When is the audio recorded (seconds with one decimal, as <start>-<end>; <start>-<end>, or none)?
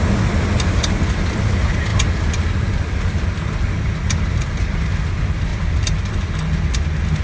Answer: 0.0-7.2